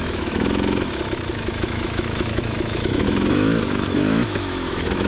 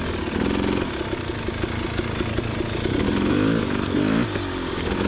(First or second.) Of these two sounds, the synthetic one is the first